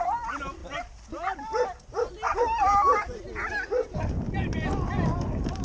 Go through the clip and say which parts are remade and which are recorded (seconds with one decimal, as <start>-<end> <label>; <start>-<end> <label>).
0.0-0.6 recorded; 0.6-3.2 remade; 3.2-5.6 recorded